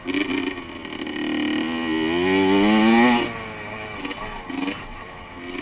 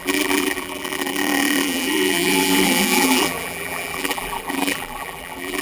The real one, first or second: first